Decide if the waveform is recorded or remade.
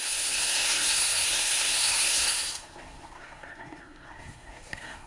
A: remade